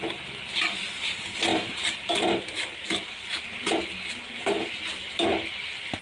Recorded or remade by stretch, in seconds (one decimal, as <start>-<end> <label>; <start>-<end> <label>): 0.0-1.5 recorded; 1.5-3.3 remade; 3.3-6.0 recorded